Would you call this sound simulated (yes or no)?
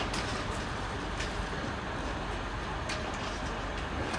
no